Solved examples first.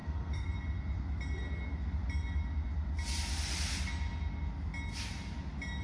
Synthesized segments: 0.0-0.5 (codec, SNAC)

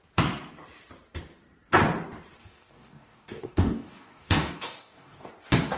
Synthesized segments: 2.4-5.3 (codec, DAC)

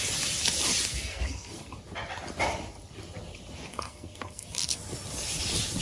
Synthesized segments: 0.9-1.7 (codec, SNAC); 3.7-4.8

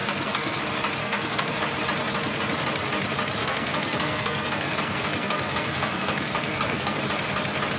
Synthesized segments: 0.0-0.6 (codec, SNAC); 1.0-1.5; 3.4-7.0